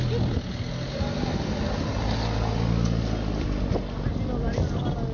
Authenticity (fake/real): real